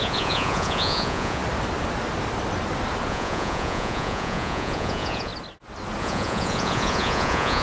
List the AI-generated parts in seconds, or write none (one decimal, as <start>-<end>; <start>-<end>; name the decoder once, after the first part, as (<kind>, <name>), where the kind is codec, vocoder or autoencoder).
0.0-1.4 (vocoder, Vocos); 3.1-5.3; 6.0-7.6